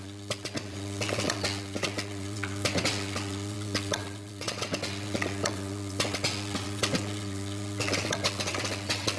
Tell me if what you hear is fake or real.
fake